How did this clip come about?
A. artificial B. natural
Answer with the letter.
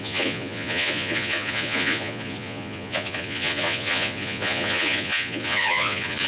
A